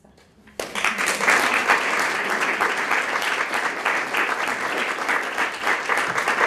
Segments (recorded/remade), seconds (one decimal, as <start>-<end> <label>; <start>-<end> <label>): 0.0-6.5 recorded